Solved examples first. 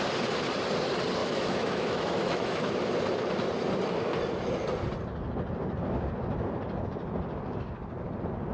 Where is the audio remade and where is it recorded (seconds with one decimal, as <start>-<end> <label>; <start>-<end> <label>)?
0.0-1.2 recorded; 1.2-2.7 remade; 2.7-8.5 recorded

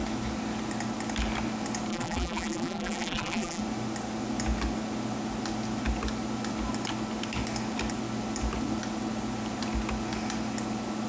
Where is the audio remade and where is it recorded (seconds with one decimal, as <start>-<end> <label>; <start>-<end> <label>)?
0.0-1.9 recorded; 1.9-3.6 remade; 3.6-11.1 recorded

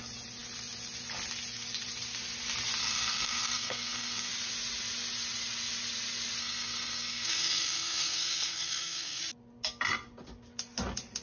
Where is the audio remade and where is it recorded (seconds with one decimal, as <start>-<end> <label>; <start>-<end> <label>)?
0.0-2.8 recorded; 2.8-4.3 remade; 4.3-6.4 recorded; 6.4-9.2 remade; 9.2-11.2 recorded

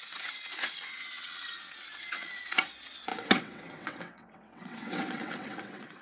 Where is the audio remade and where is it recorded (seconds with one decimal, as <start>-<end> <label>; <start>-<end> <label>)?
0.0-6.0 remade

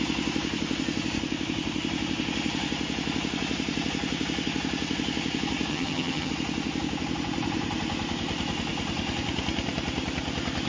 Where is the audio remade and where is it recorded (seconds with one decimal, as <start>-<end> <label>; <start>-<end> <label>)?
0.0-5.7 recorded; 5.7-6.3 remade; 6.3-10.7 recorded

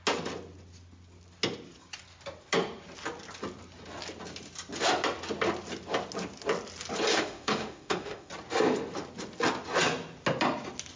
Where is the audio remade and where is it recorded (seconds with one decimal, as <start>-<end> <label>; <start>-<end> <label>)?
0.0-7.1 recorded; 7.1-8.3 remade; 8.3-11.0 recorded